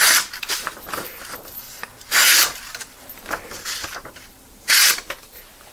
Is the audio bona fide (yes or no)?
no